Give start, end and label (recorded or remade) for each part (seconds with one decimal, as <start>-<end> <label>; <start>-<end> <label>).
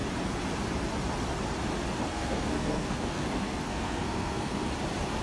0.0-2.1 recorded; 2.1-4.7 remade; 4.7-5.2 recorded